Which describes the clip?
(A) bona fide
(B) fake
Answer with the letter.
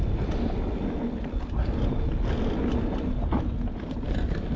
A